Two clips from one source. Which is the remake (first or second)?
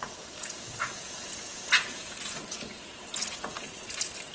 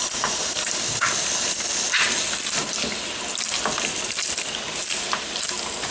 first